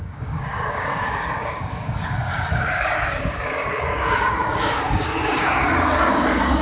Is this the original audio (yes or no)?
no